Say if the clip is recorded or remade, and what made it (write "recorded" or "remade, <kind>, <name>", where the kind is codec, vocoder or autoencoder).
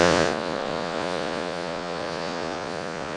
remade, vocoder, Vocos